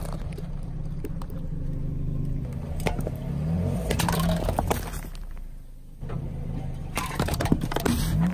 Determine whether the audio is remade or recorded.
remade